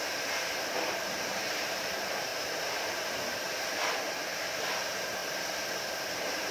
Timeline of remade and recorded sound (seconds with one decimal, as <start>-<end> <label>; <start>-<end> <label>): 0.0-5.2 remade; 5.2-6.1 recorded; 6.1-6.5 remade